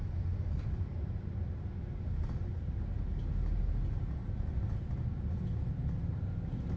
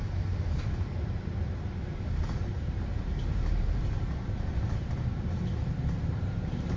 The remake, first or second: second